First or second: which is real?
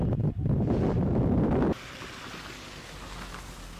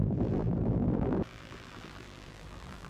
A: first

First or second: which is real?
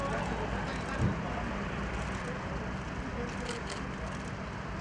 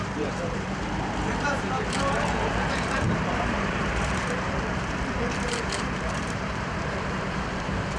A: first